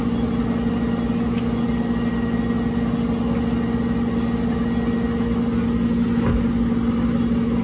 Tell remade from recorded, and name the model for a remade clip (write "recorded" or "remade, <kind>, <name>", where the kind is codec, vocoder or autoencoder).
recorded